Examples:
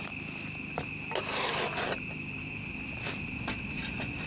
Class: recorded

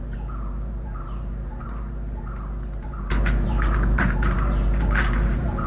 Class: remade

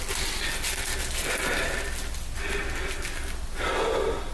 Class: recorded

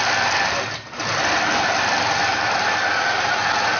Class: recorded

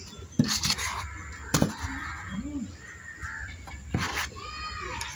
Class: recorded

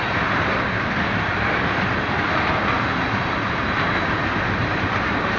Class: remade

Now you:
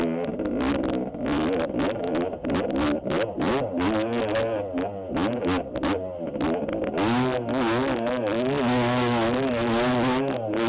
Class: recorded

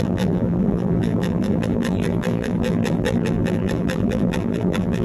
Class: remade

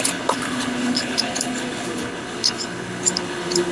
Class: remade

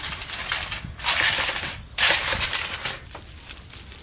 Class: recorded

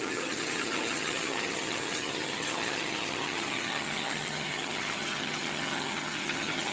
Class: remade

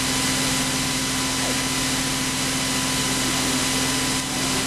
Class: recorded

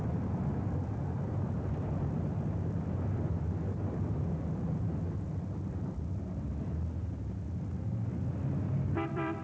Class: remade